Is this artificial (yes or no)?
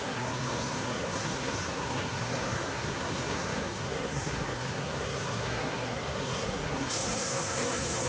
yes